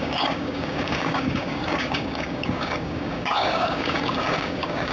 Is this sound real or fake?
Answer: fake